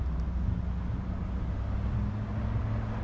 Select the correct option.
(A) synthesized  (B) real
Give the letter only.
B